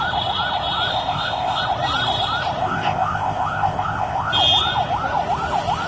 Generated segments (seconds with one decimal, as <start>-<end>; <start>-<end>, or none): 0.9-1.6; 2.6-4.3